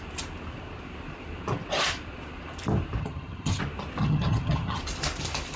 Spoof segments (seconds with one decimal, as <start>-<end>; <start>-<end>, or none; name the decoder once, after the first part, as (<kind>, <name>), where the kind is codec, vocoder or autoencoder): 3.0-3.6 (vocoder, HiFi-GAN); 4.0-4.8